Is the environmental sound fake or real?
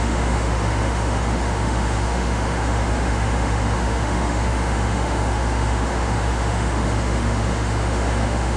fake